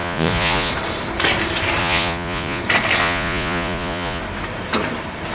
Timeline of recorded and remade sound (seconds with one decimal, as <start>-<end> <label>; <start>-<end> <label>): 0.0-0.7 remade; 0.7-1.8 recorded; 1.8-2.6 remade; 2.6-3.0 recorded; 3.0-4.2 remade; 4.2-5.3 recorded